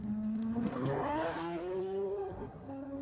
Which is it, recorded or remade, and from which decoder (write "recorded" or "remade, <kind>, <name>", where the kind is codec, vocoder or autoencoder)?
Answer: remade, codec, SNAC